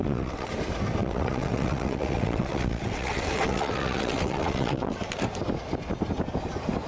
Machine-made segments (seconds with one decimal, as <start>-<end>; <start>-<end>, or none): 0.0-0.5; 1.0-5.1